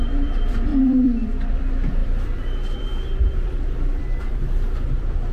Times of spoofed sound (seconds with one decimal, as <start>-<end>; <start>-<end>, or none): 0.0-5.3